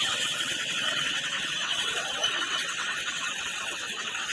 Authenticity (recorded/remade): remade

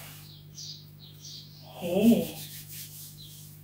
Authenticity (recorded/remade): remade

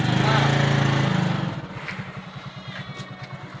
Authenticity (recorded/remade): recorded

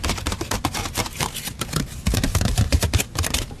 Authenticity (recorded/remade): remade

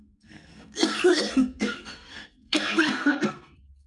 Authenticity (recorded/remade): remade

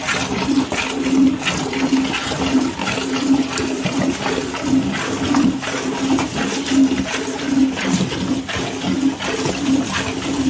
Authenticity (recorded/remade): recorded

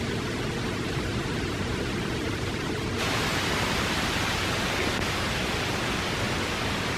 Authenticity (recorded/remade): recorded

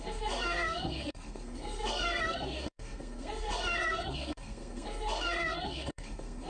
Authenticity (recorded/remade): remade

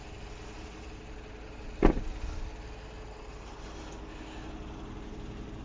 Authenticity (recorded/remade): recorded